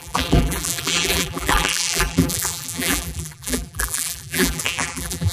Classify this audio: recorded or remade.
remade